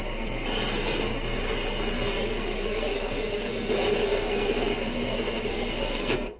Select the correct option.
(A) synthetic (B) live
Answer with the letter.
A